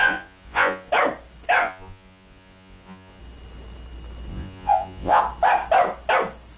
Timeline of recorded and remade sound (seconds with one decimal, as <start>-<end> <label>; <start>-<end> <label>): 0.0-0.9 remade; 0.9-1.6 recorded; 1.6-3.2 remade; 3.2-4.3 recorded; 4.3-5.2 remade; 5.2-6.6 recorded